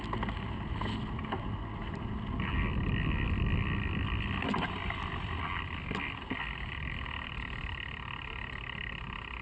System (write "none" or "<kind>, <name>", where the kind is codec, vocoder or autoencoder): none